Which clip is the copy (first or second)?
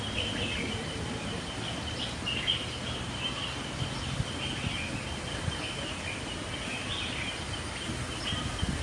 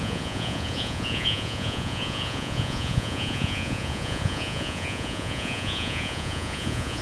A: second